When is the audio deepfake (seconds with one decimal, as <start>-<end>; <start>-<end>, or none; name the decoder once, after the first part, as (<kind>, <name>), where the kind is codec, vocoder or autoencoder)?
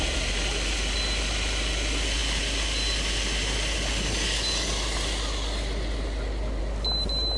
none